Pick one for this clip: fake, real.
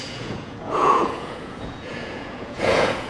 fake